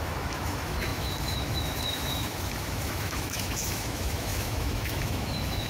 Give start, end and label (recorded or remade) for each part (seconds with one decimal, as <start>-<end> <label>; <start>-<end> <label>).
0.0-5.7 remade